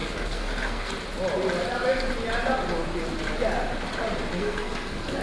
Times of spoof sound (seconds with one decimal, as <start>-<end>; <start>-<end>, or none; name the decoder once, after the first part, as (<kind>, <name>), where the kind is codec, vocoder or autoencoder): 0.0-0.9 (codec, SNAC); 4.3-5.2